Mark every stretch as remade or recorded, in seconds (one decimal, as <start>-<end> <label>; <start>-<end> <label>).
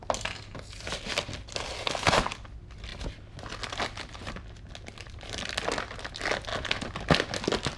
0.0-7.8 recorded